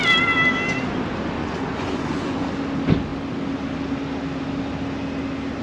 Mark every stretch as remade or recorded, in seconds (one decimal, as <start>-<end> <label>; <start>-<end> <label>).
0.0-1.4 recorded; 1.4-2.5 remade; 2.5-5.6 recorded